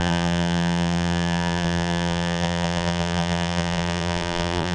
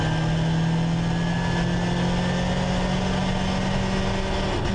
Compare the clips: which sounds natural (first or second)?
second